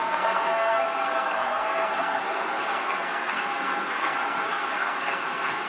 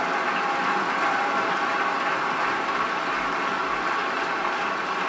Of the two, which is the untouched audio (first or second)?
second